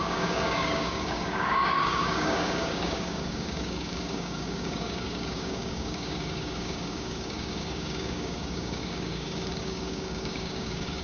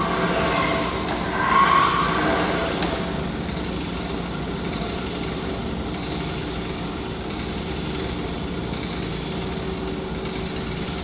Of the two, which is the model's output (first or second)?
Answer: first